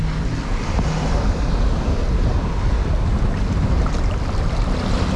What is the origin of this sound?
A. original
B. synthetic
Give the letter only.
A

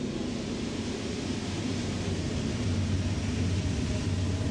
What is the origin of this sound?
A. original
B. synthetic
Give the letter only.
A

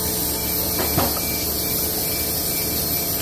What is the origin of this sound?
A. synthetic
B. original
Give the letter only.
B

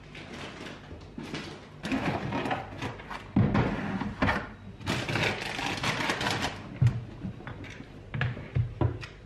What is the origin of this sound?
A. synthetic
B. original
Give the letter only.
B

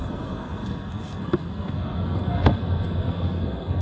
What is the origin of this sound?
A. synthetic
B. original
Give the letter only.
A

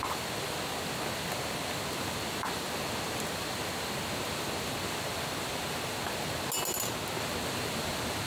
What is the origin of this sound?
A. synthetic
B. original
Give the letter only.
B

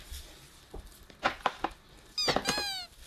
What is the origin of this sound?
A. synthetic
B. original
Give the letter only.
B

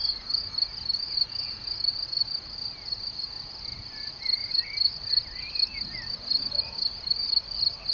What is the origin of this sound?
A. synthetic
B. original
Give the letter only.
B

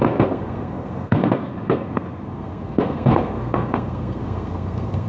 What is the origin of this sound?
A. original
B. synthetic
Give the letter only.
B